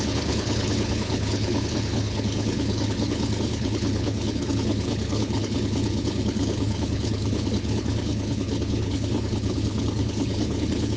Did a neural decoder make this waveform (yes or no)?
yes